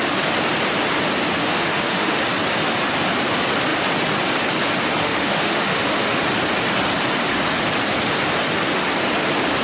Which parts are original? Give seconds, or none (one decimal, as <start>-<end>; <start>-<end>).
0.0-1.4; 2.2-5.0; 6.2-9.6